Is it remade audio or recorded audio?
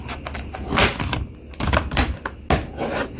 recorded